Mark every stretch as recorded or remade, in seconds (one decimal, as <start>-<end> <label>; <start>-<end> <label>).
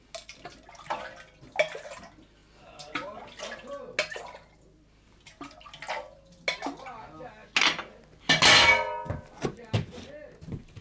0.0-10.8 recorded